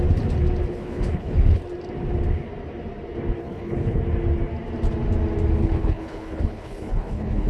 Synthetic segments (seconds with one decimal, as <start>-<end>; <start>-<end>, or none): 0.7-1.6; 3.4-4.0; 5.6-7.5